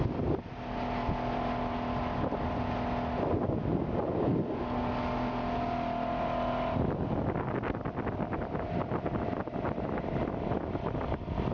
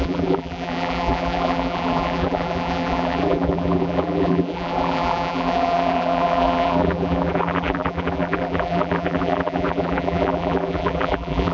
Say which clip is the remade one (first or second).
second